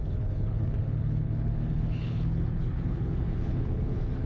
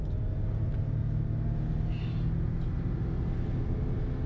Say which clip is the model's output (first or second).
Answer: first